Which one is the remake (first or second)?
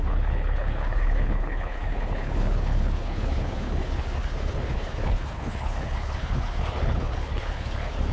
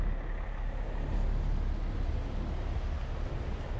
first